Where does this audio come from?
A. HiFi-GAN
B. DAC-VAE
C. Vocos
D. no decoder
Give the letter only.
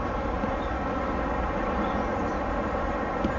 D